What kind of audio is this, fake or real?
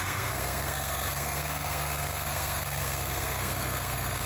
fake